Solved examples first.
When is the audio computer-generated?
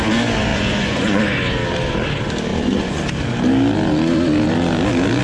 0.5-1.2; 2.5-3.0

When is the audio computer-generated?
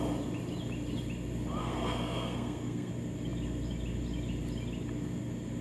1.6-2.9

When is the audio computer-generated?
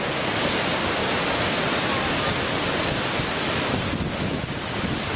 none